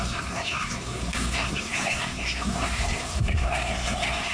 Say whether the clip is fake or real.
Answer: fake